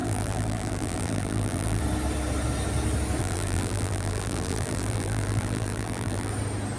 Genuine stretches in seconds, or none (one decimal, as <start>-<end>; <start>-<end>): 1.8-3.2; 6.3-6.8